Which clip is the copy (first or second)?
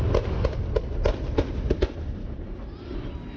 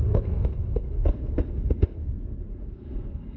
second